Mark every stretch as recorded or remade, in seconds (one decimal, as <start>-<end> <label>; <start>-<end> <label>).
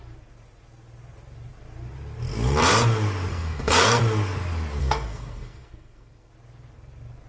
0.0-3.3 recorded; 3.3-4.0 remade; 4.0-4.8 recorded; 4.8-6.3 remade; 6.3-7.3 recorded